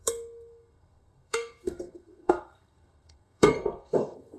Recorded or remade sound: remade